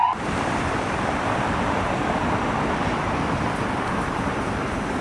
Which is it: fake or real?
fake